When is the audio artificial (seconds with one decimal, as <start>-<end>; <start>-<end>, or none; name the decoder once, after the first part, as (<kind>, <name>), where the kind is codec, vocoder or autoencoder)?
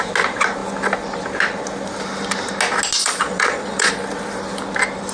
3.0-3.9 (vocoder, Vocos)